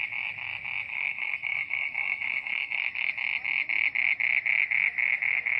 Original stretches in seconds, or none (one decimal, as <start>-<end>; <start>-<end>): 0.0-0.9; 3.1-5.6